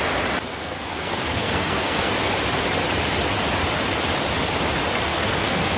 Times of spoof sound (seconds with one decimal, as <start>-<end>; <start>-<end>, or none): 0.5-2.1; 5.1-5.8

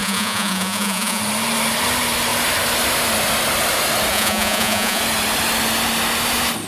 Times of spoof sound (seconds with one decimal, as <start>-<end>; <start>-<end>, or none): 0.0-1.2; 4.1-5.0

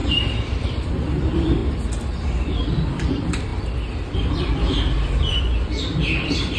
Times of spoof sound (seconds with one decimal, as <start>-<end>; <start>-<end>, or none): 0.0-1.6; 2.2-6.6

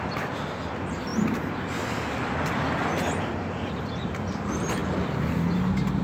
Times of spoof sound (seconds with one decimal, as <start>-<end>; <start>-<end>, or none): 0.0-1.1; 2.5-4.8

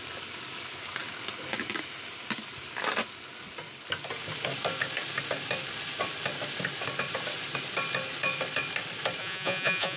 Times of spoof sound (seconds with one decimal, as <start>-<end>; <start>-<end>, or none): 9.2-10.0